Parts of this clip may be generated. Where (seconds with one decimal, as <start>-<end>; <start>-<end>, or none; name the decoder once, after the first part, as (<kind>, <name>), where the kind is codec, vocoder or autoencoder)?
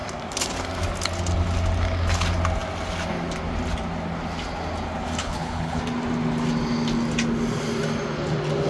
5.2-5.8 (codec, HILCodec)